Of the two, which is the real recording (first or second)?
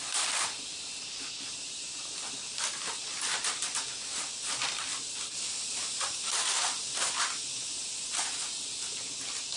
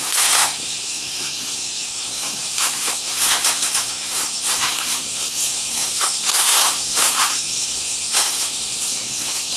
first